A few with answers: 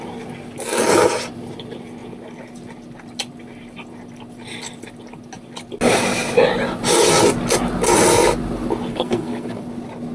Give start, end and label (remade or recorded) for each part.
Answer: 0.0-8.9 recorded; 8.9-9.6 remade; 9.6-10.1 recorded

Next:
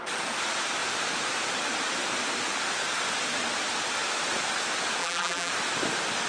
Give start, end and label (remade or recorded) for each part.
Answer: 0.0-5.0 recorded; 5.0-5.5 remade; 5.5-6.3 recorded

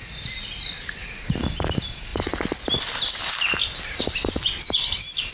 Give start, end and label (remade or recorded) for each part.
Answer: 0.0-5.3 recorded

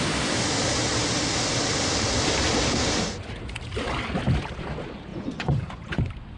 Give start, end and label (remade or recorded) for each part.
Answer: 0.0-5.1 recorded; 5.1-6.0 remade; 6.0-6.4 recorded

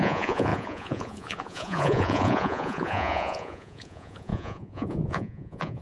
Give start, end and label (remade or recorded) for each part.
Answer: 0.0-5.8 remade

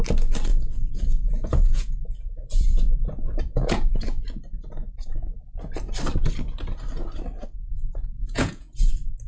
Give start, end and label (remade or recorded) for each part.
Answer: 0.0-0.5 recorded; 0.5-4.2 remade; 4.2-8.2 recorded; 8.2-8.9 remade; 8.9-9.3 recorded

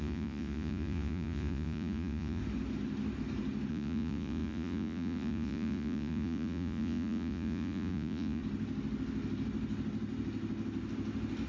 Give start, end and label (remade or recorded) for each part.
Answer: 0.0-2.4 remade; 2.4-3.7 recorded; 3.7-8.4 remade; 8.4-11.5 recorded

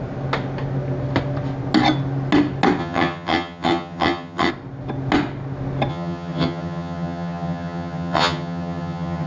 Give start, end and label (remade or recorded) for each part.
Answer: 0.0-2.8 recorded; 2.8-4.5 remade; 4.5-5.9 recorded; 5.9-9.3 remade